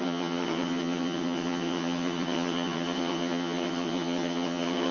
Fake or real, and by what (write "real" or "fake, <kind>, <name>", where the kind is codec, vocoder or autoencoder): fake, vocoder, HiFi-GAN